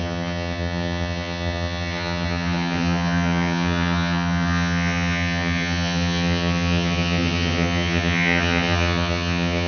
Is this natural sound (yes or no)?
no